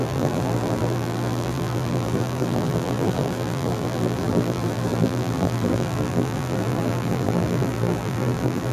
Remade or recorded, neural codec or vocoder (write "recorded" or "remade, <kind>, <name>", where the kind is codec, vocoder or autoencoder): remade, vocoder, BigVGAN v2